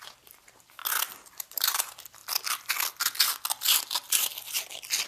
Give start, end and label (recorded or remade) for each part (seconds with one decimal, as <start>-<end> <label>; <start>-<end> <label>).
0.0-0.8 remade; 0.8-1.4 recorded; 1.4-2.2 remade; 2.2-5.1 recorded